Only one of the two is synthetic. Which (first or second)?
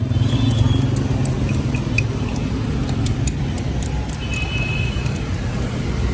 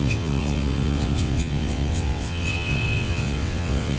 second